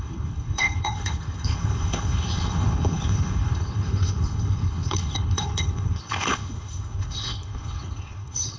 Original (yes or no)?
no